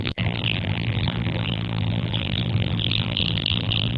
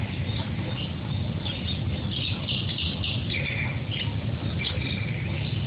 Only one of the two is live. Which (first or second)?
second